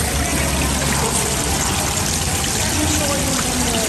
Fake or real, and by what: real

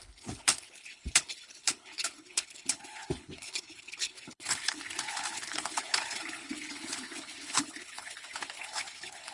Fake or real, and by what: fake, codec, HILCodec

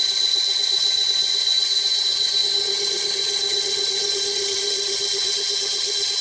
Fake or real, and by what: fake, vocoder, HiFi-GAN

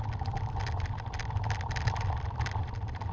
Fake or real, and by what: real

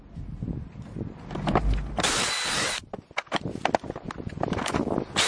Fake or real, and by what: real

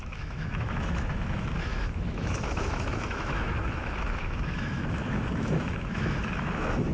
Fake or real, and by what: fake, autoencoder, DAC-VAE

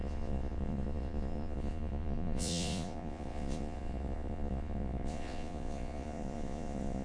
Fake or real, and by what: fake, vocoder, Vocos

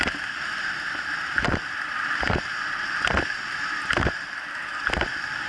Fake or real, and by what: real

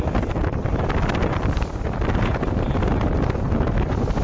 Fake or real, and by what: real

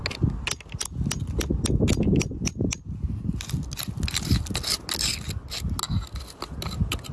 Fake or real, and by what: real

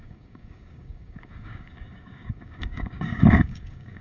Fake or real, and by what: fake, codec, DAC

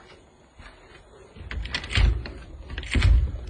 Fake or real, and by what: real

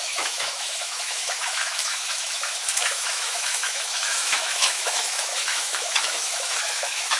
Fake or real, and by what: fake, autoencoder, DAC-VAE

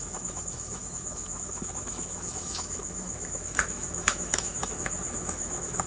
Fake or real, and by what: fake, autoencoder, DAC-VAE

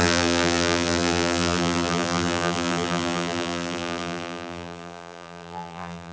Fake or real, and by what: fake, vocoder, BigVGAN v2